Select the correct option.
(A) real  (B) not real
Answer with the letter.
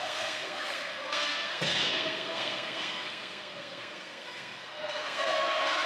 B